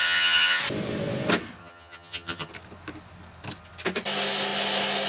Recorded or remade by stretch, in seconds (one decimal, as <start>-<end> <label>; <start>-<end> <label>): 0.0-0.6 remade; 0.6-1.6 recorded; 1.6-2.5 remade; 2.5-5.1 recorded